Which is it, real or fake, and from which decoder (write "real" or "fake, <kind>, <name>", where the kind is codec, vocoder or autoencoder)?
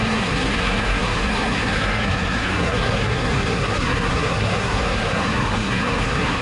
fake, codec, SNAC